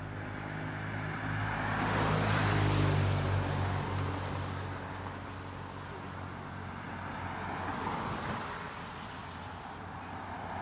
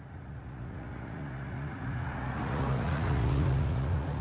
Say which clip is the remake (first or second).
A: second